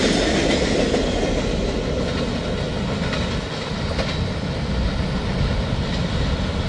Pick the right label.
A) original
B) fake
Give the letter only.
A